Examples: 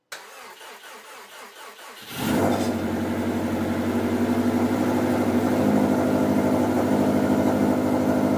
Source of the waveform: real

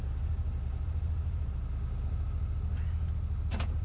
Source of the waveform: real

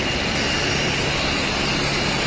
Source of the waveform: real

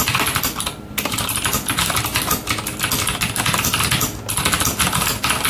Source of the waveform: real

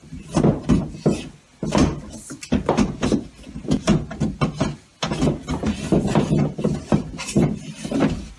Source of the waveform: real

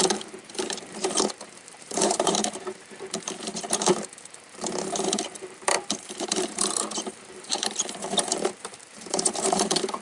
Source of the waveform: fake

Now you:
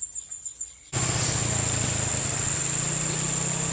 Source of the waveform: real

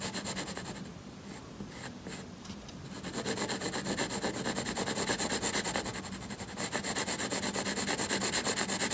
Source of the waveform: real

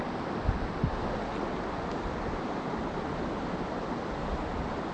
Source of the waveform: real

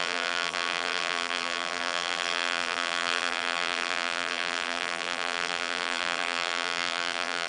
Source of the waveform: fake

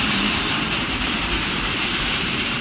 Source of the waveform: fake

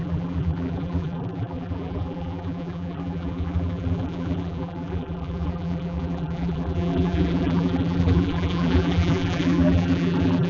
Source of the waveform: fake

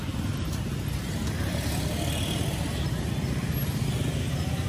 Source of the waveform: real